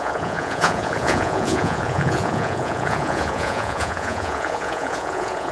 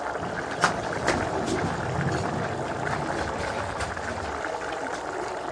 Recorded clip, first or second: second